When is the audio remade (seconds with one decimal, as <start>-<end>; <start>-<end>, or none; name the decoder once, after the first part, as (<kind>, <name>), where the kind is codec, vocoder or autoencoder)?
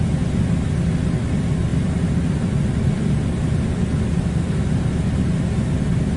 1.7-2.9 (vocoder, BigVGAN v2)